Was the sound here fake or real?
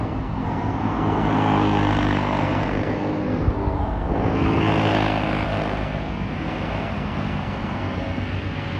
fake